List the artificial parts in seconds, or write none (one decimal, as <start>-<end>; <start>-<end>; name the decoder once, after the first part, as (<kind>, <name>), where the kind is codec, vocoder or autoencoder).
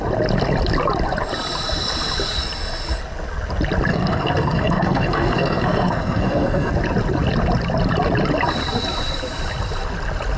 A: 3.9-6.7 (codec, SNAC)